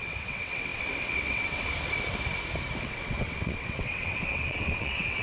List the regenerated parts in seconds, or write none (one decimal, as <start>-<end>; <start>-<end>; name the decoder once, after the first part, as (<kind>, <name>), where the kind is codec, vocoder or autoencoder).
0.0-1.7 (vocoder, WaveNeXt); 2.8-5.2